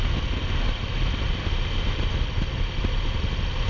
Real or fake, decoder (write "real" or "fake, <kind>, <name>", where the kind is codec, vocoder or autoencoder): real